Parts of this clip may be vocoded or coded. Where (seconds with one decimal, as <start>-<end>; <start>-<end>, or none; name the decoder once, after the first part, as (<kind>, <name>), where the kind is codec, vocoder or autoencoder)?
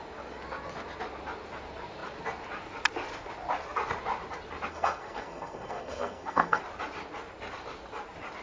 4.7-6.6 (codec, SNAC)